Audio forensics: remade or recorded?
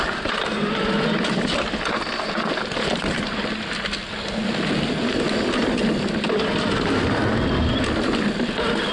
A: recorded